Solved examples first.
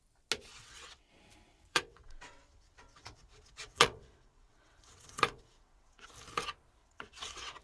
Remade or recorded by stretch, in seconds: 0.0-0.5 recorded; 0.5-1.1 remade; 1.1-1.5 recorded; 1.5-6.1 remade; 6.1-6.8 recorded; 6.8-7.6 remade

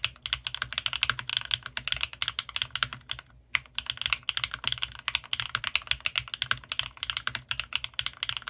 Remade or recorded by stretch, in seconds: 0.0-8.5 recorded

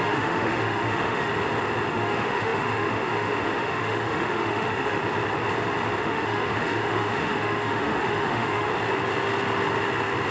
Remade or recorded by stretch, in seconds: 0.0-1.3 remade; 1.3-1.9 recorded; 1.9-5.0 remade; 5.0-6.0 recorded; 6.0-8.7 remade; 8.7-10.3 recorded

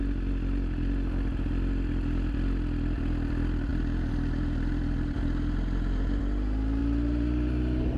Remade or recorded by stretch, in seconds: 0.0-3.7 recorded; 3.7-6.2 remade; 6.2-6.8 recorded; 6.8-8.0 remade

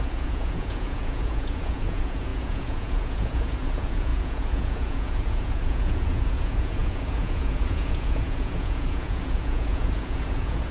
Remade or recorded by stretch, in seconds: 0.0-10.7 remade